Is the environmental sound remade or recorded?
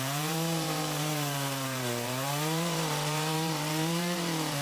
remade